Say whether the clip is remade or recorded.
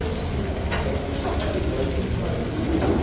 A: recorded